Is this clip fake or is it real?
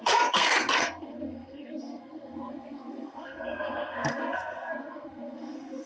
fake